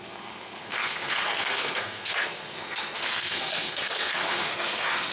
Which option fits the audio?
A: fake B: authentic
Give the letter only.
A